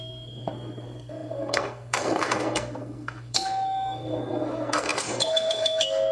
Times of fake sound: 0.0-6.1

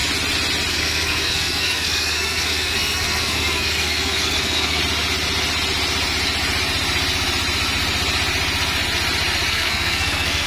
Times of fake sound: 0.7-4.8; 9.5-10.5

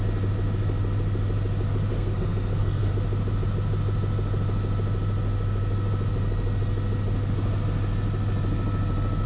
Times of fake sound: 1.9-2.9

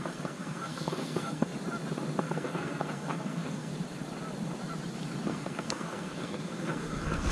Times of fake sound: 0.0-1.5; 2.2-3.7; 5.3-7.3